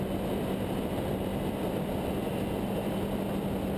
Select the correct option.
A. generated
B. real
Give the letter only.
B